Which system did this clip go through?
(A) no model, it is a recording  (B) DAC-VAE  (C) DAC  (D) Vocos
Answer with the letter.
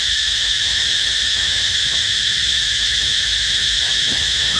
B